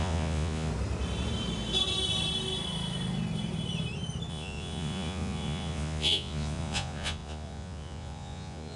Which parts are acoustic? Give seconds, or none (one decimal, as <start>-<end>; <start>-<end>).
0.7-4.3